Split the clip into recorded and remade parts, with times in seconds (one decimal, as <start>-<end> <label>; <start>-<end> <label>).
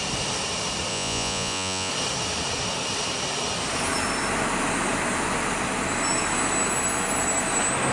0.0-0.9 recorded; 0.9-1.9 remade; 1.9-7.9 recorded